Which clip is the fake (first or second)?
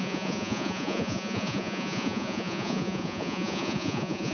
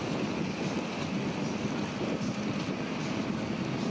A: first